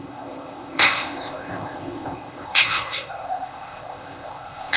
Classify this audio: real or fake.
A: fake